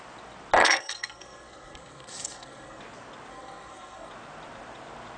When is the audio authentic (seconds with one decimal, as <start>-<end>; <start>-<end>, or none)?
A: 0.0-0.6; 2.8-3.3; 4.1-5.2